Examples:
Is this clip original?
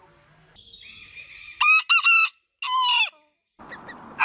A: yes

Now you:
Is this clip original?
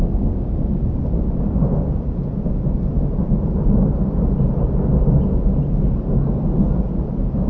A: yes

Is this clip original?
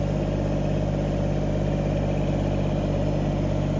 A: yes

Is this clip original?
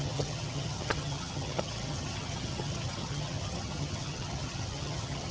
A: no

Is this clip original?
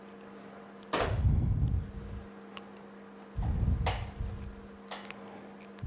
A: yes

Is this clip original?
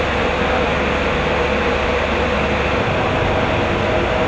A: yes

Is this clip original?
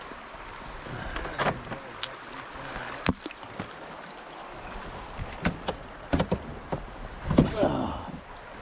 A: yes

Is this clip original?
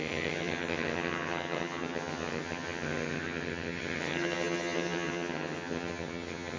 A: no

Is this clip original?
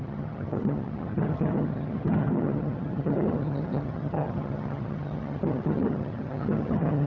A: no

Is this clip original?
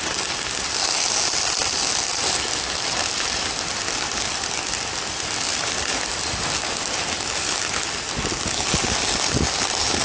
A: yes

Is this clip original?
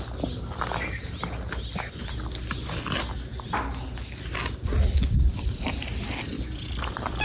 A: yes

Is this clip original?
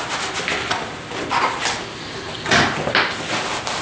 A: yes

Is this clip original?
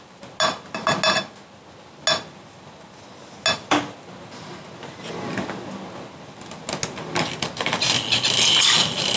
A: yes